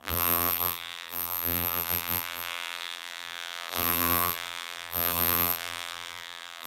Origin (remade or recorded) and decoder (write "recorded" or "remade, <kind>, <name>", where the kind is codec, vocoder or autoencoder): remade, vocoder, BigVGAN v2